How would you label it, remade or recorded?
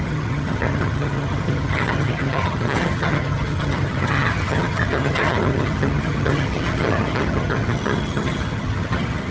remade